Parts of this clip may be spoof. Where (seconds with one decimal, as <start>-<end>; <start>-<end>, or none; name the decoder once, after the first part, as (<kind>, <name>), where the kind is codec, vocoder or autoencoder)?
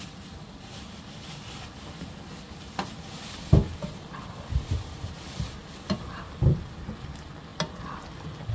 none